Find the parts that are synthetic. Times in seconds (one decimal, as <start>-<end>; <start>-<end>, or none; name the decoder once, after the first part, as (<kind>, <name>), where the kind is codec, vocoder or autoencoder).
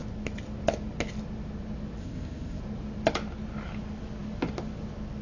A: 2.0-2.6 (codec, ZipCodec)